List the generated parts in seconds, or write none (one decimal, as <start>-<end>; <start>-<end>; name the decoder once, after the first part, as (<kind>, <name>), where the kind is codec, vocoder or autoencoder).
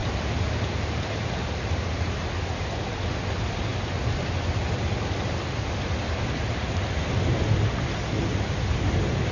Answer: none